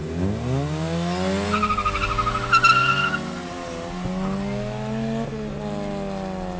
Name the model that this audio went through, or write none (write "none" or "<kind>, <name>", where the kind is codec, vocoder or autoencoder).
none